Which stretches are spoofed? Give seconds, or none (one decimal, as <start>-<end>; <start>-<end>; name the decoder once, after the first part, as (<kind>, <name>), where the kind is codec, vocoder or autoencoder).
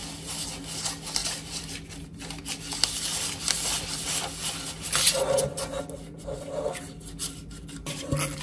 none